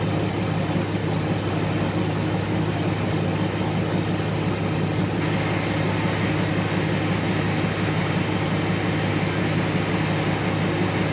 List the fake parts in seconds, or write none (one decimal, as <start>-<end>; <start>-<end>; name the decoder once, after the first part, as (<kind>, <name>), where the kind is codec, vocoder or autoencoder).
none